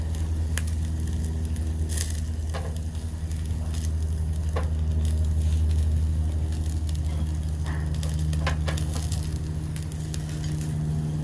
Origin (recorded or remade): recorded